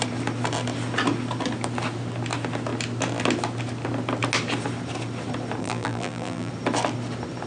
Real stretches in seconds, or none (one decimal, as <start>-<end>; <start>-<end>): 0.0-5.6; 6.5-7.5